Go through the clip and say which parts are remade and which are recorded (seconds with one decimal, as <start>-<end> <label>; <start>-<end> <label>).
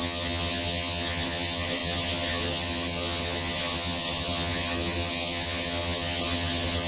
0.0-6.9 remade